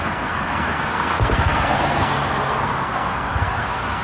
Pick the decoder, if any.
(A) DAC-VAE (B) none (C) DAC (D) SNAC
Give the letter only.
D